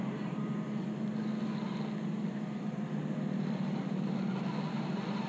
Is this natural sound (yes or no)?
yes